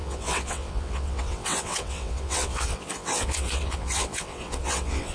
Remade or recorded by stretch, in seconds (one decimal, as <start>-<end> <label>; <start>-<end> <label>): 0.0-5.1 remade

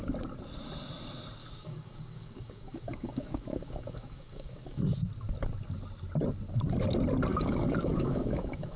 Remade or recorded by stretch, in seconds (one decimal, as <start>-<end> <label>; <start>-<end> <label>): 0.0-1.4 recorded; 1.4-4.8 remade; 4.8-7.3 recorded; 7.3-8.8 remade

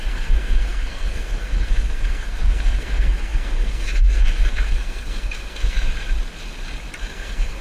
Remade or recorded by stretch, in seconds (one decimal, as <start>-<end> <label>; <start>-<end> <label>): 0.0-5.9 remade; 5.9-7.0 recorded; 7.0-7.6 remade